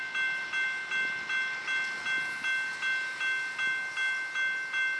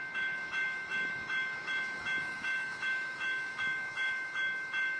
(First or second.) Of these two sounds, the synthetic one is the second